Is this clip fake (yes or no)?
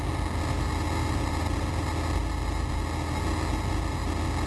no